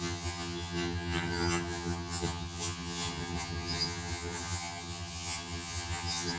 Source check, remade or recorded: remade